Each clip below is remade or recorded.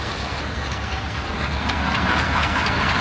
remade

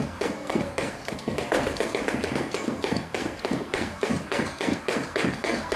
remade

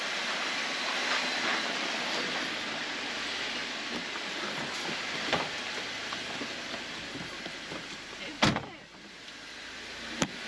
recorded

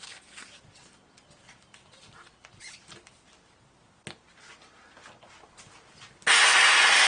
recorded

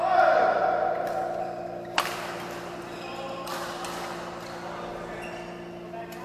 recorded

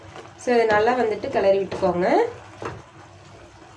recorded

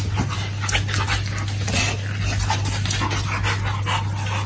recorded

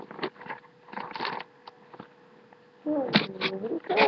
recorded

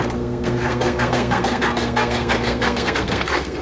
remade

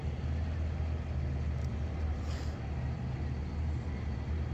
recorded